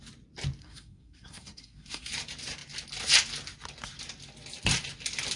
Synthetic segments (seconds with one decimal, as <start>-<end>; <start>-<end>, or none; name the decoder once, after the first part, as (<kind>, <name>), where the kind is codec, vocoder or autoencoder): 0.6-2.1 (codec, SNAC)